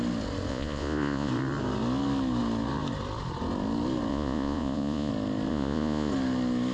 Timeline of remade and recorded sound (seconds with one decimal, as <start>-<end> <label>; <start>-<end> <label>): 0.0-0.5 recorded; 0.5-1.3 remade; 1.3-4.1 recorded; 4.1-5.1 remade; 5.1-5.5 recorded; 5.5-6.1 remade; 6.1-6.7 recorded